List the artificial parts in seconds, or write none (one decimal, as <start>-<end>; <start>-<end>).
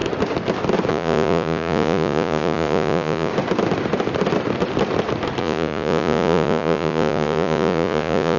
0.9-3.3; 5.4-8.4